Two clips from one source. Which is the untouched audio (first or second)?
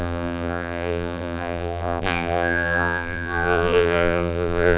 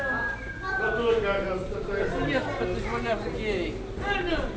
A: second